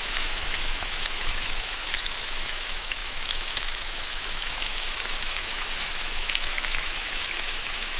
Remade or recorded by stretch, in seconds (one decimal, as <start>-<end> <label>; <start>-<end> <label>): 0.0-8.0 remade